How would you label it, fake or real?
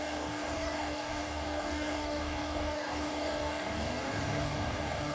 fake